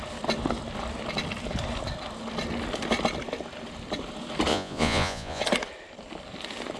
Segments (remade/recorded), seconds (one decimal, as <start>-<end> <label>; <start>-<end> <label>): 0.0-4.5 recorded; 4.5-5.4 remade; 5.4-6.8 recorded